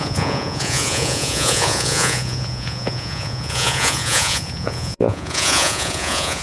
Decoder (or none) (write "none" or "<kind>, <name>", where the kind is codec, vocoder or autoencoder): vocoder, Vocos